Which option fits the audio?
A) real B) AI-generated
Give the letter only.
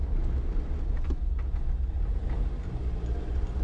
A